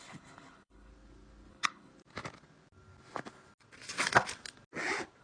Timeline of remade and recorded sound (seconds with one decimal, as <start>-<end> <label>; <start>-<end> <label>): 0.0-0.9 remade; 0.9-1.5 recorded; 1.5-1.9 remade; 1.9-5.2 recorded